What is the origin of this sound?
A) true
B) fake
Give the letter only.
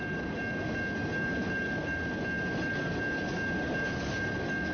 A